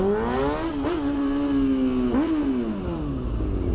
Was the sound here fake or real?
real